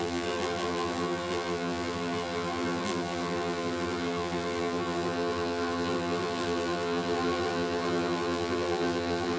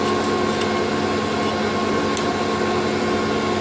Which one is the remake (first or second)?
first